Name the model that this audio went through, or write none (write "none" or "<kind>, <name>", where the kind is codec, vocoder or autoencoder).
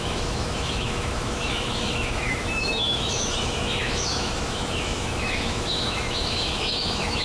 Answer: autoencoder, DAC-VAE